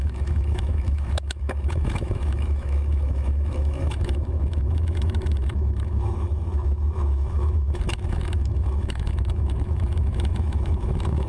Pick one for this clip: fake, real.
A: fake